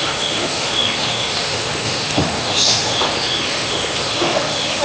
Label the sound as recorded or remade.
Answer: remade